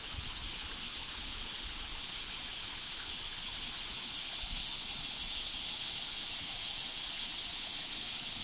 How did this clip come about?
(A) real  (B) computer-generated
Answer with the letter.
B